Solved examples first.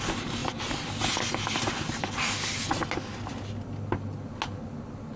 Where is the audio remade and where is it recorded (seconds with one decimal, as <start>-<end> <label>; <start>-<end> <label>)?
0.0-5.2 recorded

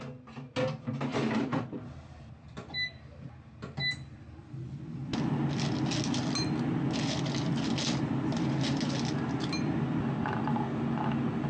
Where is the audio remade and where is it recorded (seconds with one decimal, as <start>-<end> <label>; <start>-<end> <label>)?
0.0-11.5 recorded

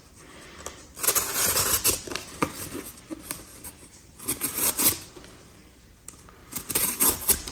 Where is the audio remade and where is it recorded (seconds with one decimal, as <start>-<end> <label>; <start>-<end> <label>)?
0.0-3.5 recorded; 3.5-4.7 remade; 4.7-6.4 recorded; 6.4-7.0 remade; 7.0-7.5 recorded